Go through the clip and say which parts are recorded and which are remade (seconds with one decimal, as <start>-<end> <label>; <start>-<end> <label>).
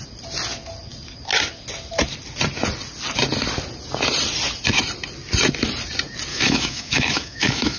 0.0-6.3 recorded; 6.3-7.8 remade